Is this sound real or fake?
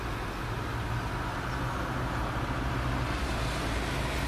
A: real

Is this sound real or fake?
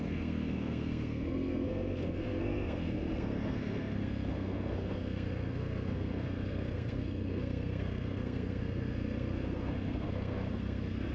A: fake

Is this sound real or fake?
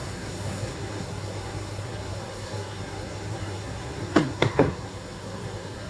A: fake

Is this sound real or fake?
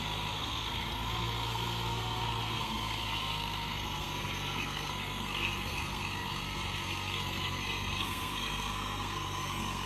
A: fake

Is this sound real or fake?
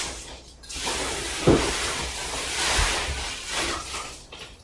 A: real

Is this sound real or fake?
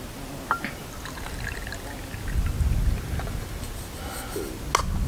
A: real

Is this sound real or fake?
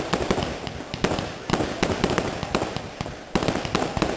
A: real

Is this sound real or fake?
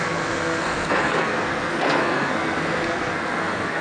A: fake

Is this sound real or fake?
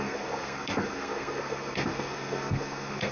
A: fake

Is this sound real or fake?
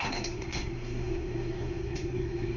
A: fake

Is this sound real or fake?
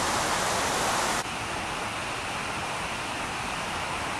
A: real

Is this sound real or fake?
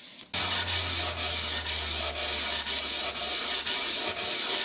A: real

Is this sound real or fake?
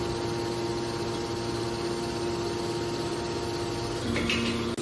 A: real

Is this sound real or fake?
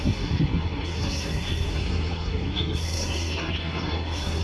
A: fake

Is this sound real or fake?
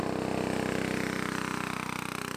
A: real